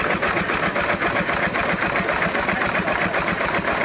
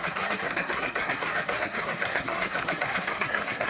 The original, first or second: first